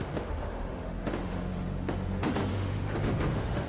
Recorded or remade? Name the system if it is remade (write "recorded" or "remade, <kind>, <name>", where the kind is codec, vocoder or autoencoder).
remade, autoencoder, DAC-VAE